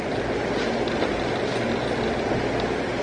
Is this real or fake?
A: real